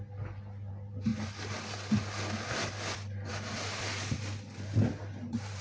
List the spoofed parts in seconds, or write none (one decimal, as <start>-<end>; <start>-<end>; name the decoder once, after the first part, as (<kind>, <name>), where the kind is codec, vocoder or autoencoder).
none